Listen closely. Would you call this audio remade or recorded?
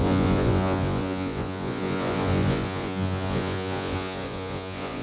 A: remade